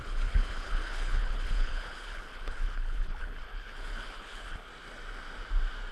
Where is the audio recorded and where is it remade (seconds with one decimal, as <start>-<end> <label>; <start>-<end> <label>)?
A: 0.0-4.7 remade; 4.7-5.9 recorded